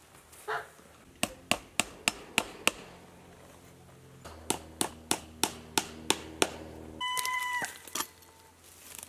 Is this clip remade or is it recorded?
recorded